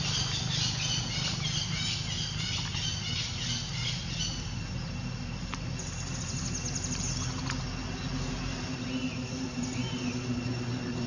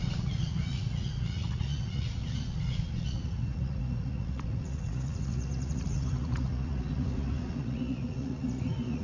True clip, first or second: first